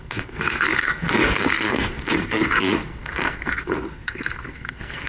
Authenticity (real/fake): fake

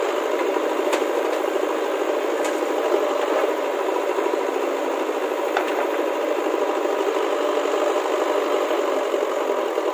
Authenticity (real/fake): real